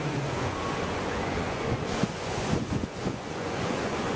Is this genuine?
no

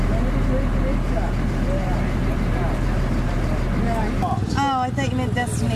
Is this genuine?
yes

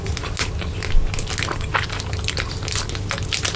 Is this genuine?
yes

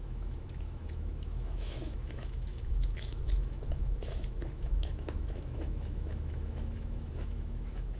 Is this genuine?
no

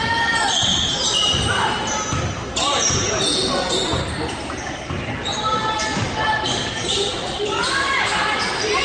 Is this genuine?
no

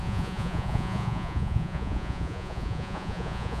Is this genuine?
no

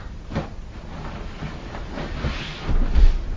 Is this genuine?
yes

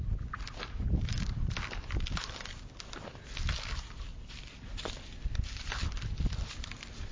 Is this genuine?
yes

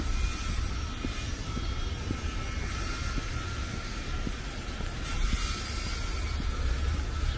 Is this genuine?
yes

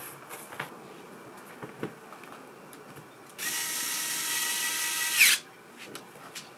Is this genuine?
yes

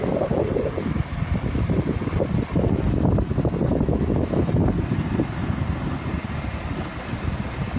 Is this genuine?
yes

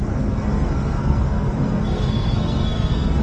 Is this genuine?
no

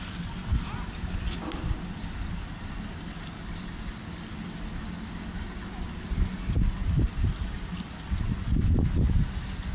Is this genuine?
yes